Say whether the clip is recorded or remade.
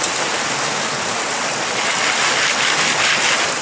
recorded